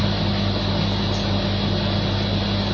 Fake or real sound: real